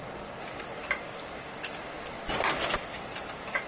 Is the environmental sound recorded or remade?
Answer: recorded